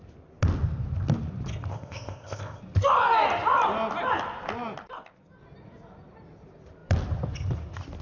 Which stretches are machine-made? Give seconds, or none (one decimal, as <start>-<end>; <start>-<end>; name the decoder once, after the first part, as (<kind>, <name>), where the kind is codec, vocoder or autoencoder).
1.7-2.6 (codec, ZipCodec)